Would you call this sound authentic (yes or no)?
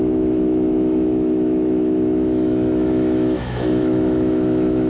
no